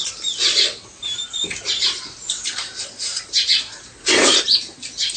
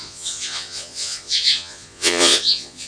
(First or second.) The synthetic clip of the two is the second